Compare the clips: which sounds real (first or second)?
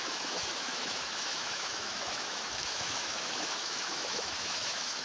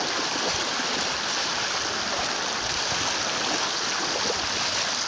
second